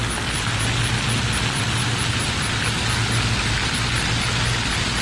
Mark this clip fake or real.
real